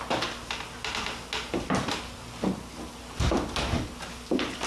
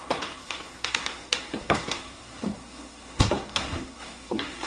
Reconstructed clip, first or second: second